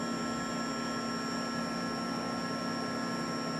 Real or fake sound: real